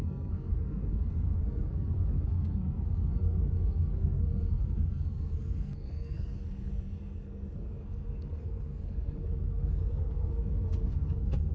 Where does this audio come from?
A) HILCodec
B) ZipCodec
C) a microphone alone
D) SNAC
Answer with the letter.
D